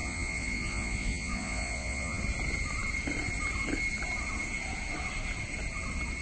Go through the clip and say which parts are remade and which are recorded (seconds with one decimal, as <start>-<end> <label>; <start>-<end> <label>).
0.0-2.2 remade; 2.2-6.2 recorded